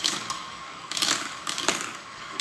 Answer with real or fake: fake